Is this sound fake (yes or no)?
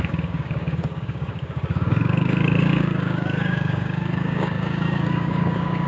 yes